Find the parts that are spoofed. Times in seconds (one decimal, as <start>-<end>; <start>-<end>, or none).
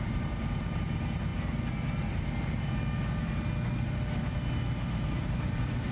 0.0-1.3; 4.8-5.9